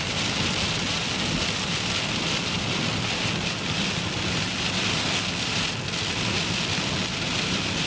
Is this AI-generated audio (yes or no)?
no